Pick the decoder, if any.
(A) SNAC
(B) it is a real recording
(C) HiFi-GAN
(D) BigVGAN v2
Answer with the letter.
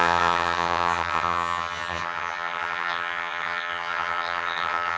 C